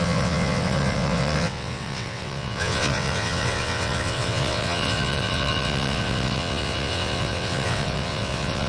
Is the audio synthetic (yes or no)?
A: yes